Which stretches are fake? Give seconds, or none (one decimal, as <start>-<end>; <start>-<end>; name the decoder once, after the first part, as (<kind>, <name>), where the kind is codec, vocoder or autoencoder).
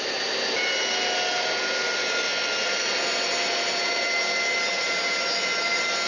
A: none